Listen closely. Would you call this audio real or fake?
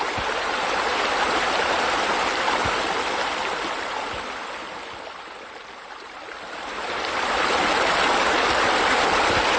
fake